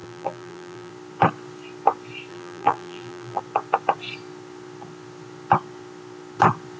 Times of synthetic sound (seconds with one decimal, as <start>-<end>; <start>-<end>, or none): 0.0-0.9; 2.3-3.4